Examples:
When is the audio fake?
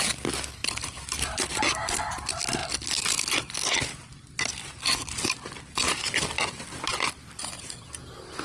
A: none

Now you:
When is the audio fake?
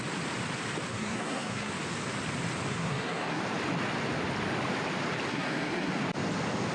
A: 0.9-1.7 (codec, SNAC); 2.7-3.4; 5.3-5.9